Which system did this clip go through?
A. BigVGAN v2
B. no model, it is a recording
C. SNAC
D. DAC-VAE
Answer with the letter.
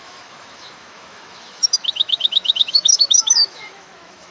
D